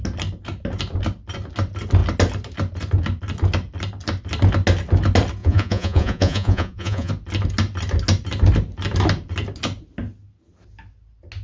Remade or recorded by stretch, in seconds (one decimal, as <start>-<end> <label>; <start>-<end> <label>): 0.0-5.4 recorded; 5.4-7.1 remade; 7.1-11.4 recorded